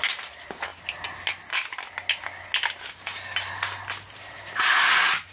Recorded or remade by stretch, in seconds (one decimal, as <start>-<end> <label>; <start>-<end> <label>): 0.0-5.3 recorded